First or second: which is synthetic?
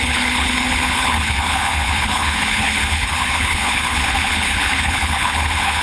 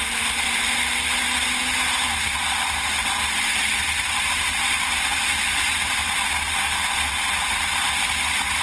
first